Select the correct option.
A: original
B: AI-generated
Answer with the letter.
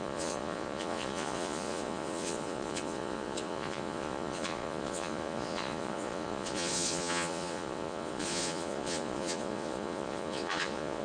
B